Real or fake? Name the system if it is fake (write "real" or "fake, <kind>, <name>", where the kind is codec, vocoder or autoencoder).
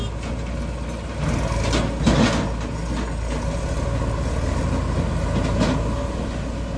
real